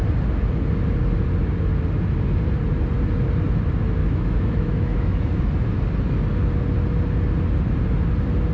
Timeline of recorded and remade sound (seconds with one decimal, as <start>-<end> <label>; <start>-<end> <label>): 0.0-4.0 recorded; 4.0-5.4 remade; 5.4-8.5 recorded